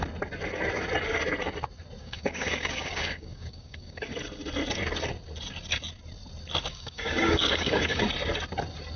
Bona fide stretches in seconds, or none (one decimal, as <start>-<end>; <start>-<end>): 0.0-2.0; 4.1-6.7; 8.0-9.0